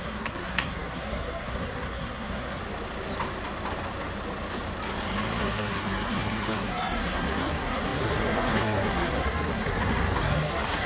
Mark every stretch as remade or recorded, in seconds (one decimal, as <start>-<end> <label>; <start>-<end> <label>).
0.0-2.6 remade; 2.6-5.4 recorded; 5.4-10.9 remade